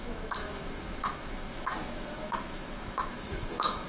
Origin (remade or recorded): remade